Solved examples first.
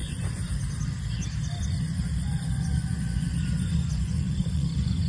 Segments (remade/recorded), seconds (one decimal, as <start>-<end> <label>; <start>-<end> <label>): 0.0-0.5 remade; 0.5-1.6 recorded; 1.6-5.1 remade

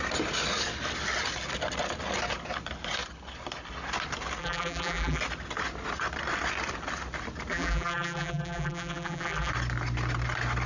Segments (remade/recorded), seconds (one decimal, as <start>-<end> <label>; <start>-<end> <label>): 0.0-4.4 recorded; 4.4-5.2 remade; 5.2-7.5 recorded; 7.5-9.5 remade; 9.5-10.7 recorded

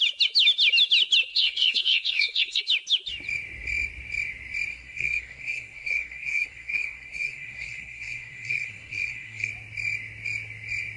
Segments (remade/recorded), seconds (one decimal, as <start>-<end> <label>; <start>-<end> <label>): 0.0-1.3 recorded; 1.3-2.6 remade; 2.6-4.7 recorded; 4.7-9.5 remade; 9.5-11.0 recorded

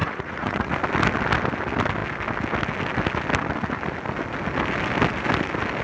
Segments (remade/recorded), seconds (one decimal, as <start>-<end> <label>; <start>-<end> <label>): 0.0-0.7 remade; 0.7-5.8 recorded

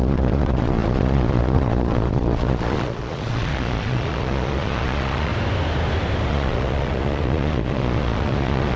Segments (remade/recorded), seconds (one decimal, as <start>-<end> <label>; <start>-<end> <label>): 0.0-5.3 remade; 5.3-6.3 recorded; 6.3-8.8 remade